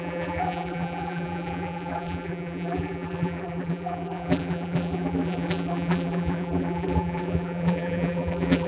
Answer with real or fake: fake